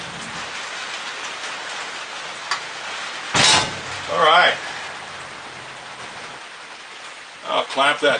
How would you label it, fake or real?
real